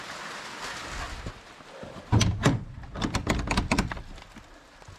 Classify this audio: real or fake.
real